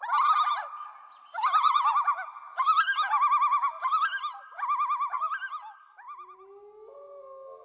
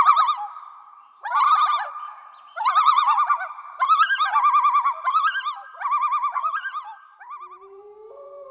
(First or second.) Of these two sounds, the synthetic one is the second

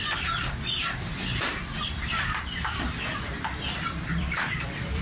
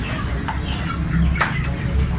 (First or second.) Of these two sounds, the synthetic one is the first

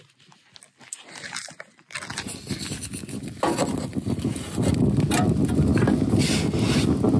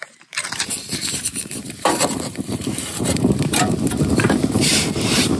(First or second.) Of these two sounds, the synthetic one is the second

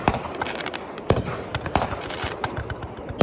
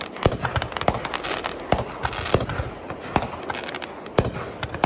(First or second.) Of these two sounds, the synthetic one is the first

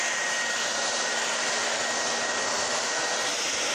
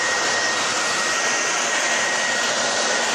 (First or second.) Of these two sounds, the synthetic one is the second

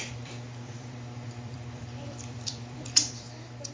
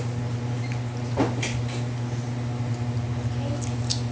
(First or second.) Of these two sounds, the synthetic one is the first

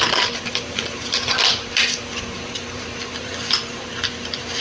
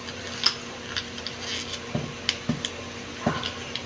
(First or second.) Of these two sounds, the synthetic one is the first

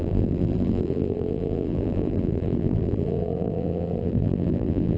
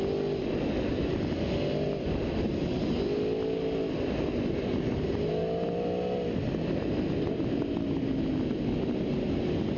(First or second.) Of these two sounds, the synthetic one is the first